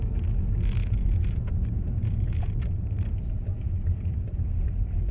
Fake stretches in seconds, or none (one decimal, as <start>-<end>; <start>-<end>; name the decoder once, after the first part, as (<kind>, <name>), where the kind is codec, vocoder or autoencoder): 0.8-2.5 (vocoder, Vocos)